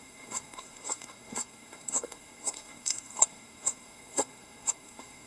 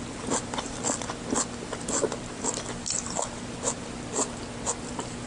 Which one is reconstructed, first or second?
first